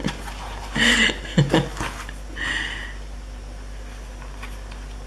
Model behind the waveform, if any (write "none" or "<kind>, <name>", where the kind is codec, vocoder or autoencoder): none